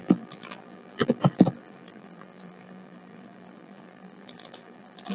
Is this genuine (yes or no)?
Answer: no